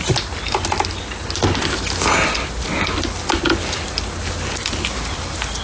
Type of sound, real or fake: real